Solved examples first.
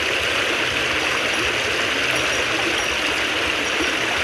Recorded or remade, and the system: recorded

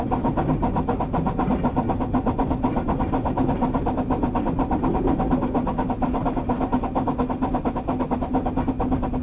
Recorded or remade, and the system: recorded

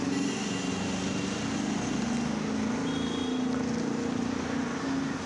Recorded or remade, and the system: recorded